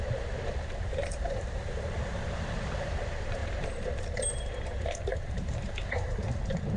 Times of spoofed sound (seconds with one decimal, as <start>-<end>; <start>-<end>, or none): 0.0-6.8